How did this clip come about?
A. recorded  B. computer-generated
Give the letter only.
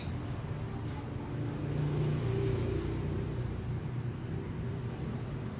A